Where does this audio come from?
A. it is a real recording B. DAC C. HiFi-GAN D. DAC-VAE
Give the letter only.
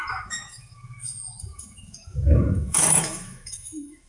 D